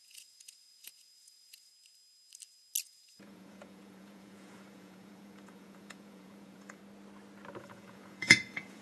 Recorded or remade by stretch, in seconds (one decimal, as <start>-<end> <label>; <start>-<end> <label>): 0.0-1.7 remade; 1.7-2.8 recorded; 2.8-6.8 remade; 6.8-7.6 recorded; 7.6-8.8 remade